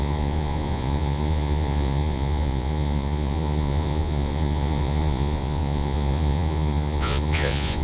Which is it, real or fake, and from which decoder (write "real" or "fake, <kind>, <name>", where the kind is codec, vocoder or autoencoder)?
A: fake, vocoder, Vocos